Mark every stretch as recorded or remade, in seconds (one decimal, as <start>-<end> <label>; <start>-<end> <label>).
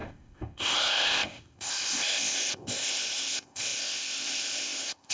0.0-5.1 remade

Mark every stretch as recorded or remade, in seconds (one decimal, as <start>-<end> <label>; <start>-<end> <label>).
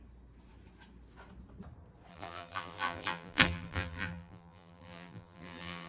0.0-2.1 recorded; 2.1-5.9 remade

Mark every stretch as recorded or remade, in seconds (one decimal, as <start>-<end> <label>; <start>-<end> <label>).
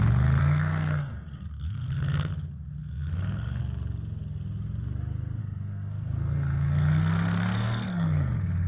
0.0-0.4 recorded; 0.4-2.3 remade; 2.3-2.8 recorded; 2.8-3.6 remade; 3.6-5.4 recorded; 5.4-8.7 remade